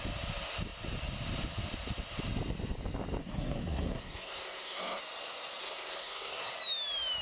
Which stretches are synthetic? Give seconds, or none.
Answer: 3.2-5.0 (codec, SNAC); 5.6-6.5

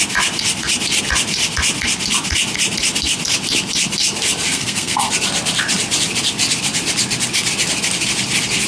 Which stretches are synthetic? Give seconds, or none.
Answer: 4.5-5.1 (codec, SNAC)

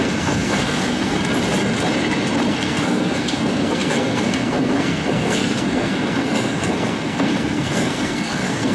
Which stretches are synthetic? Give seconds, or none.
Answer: 0.0-1.3 (codec, SNAC); 2.5-8.7

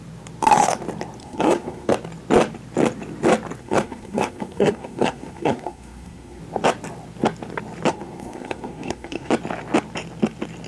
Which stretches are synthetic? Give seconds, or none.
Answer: 1.2-1.9 (codec, SNAC); 3.6-6.4; 7.9-9.3

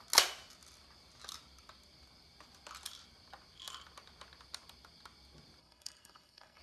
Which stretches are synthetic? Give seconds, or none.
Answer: 5.6-6.6 (codec, SNAC)